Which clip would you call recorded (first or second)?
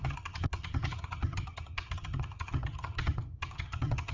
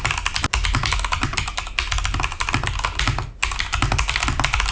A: second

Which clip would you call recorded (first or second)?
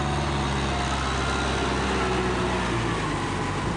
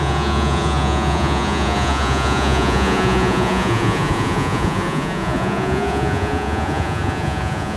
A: first